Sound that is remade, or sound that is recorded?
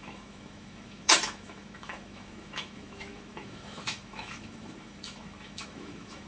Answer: remade